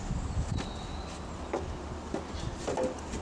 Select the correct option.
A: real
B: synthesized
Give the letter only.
A